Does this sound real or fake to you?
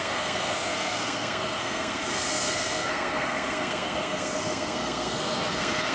fake